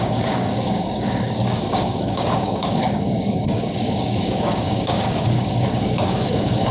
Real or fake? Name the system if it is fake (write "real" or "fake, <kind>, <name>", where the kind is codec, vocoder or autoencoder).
fake, codec, DAC